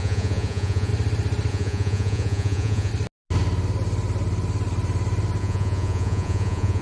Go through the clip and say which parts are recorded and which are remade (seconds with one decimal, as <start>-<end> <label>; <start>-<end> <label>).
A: 0.0-0.9 remade; 0.9-1.5 recorded; 1.5-2.9 remade; 2.9-5.4 recorded; 5.4-6.8 remade